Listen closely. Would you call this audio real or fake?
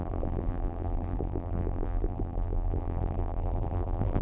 fake